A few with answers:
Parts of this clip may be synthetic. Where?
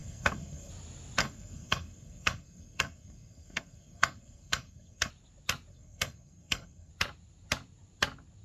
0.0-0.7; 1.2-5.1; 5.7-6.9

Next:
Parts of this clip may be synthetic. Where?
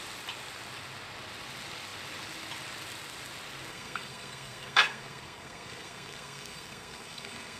3.7-7.6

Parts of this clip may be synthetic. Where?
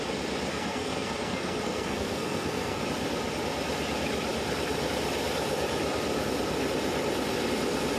0.5-2.8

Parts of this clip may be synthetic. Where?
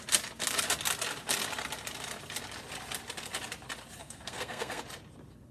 4.0-4.8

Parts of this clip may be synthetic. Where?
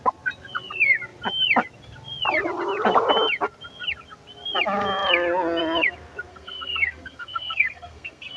6.3-8.4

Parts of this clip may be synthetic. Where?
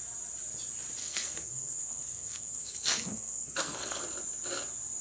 1.0-4.0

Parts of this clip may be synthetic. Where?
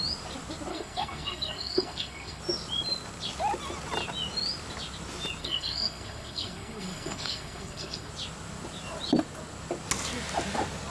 0.7-2.4; 5.4-8.1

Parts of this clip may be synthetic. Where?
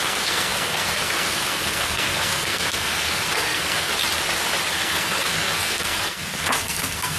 0.0-3.9; 4.7-7.2